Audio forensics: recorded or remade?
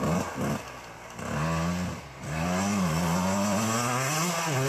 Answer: recorded